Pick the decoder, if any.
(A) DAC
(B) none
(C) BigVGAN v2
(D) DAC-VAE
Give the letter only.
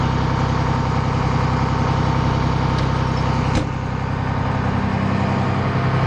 B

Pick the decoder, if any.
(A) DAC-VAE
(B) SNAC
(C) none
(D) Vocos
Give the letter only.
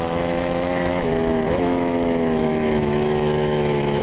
A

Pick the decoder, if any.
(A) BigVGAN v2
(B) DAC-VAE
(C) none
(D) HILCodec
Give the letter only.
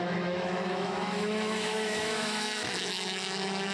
B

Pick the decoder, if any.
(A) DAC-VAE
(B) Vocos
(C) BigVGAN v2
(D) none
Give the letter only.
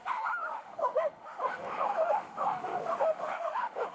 A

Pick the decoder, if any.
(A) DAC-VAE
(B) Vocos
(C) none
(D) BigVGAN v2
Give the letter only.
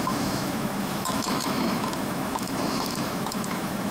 A